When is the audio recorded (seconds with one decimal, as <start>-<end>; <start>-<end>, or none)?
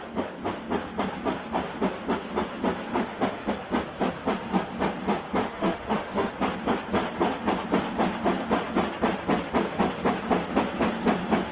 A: 0.0-2.9; 3.5-5.4; 6.3-11.5